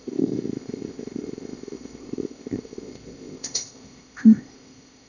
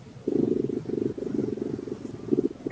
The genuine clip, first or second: second